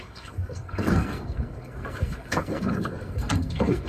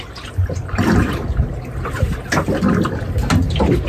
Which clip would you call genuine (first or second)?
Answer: second